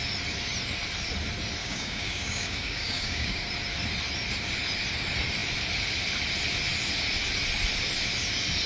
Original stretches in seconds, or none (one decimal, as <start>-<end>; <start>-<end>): 0.0-1.6; 3.4-8.7